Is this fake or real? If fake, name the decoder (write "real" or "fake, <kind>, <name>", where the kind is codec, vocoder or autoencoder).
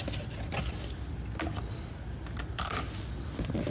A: real